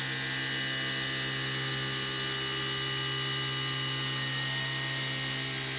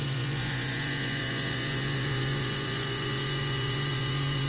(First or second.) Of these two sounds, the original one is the first